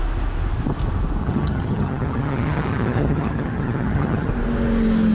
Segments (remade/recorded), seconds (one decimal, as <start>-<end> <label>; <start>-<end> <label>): 0.0-1.2 recorded; 1.2-4.3 remade; 4.3-5.1 recorded